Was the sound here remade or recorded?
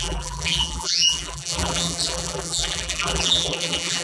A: remade